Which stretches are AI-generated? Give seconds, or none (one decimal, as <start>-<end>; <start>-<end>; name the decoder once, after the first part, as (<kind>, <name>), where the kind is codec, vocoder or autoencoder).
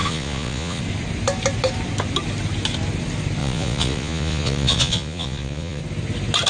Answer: 0.0-0.8 (vocoder, Vocos); 3.4-5.8